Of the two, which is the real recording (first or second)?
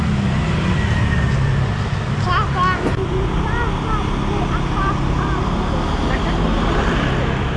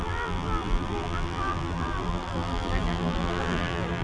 first